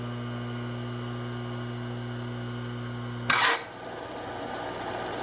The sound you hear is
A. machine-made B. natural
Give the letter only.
B